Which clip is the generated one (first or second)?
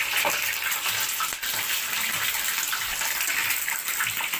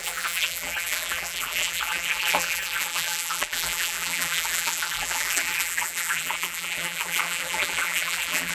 second